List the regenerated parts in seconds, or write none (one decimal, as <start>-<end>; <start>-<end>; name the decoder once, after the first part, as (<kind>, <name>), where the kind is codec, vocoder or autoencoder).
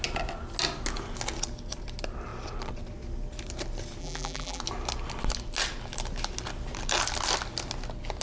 4.0-4.6 (vocoder, BigVGAN v2)